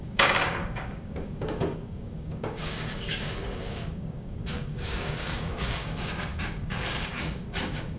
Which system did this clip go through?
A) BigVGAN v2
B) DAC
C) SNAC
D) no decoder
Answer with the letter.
B